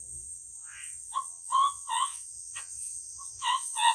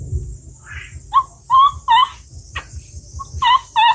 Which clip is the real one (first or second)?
second